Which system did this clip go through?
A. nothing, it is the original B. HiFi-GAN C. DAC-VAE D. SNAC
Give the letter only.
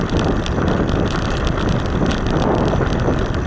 A